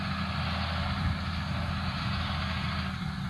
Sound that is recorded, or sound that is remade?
recorded